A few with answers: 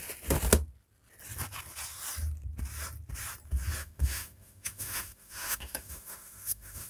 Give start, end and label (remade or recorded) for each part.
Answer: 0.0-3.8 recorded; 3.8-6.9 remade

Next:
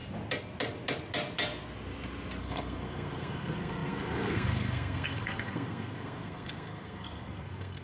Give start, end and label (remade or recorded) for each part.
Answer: 0.0-2.4 recorded; 2.4-7.8 remade

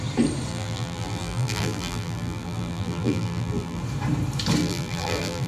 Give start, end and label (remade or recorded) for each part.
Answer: 0.0-0.5 recorded; 0.5-3.8 remade; 3.8-4.6 recorded; 4.6-5.5 remade

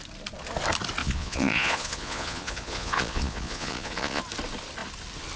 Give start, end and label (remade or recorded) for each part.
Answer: 0.0-1.0 recorded; 1.0-4.2 remade; 4.2-5.4 recorded

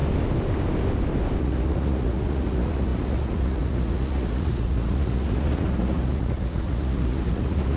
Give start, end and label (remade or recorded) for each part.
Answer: 0.0-1.4 recorded; 1.4-7.8 remade

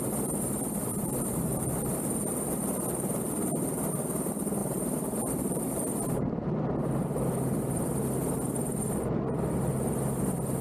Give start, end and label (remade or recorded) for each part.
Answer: 0.0-1.0 recorded; 1.0-2.8 remade; 2.8-4.6 recorded; 4.6-5.9 remade; 5.9-10.6 recorded

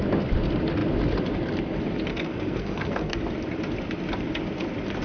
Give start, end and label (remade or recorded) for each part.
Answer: 0.0-2.1 recorded; 2.1-3.2 remade; 3.2-5.0 recorded